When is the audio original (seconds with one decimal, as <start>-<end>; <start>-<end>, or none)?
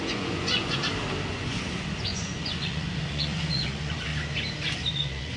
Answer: 0.8-1.3; 4.1-4.9